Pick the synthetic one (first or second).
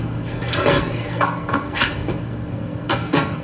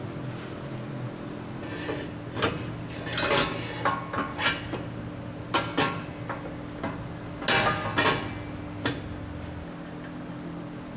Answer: first